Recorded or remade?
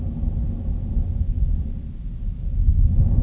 recorded